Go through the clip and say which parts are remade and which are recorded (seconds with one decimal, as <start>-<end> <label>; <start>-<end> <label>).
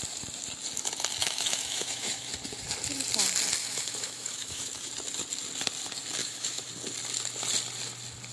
0.0-1.2 recorded; 1.2-2.3 remade; 2.3-3.6 recorded; 3.6-4.9 remade; 4.9-6.2 recorded; 6.2-6.7 remade; 6.7-8.3 recorded